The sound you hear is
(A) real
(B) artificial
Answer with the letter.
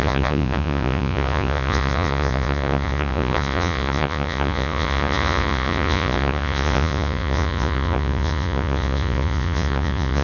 B